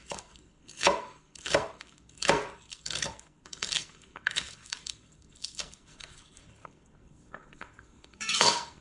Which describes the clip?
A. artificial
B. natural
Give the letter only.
A